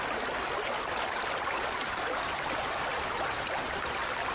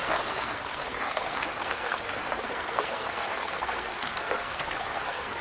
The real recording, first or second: first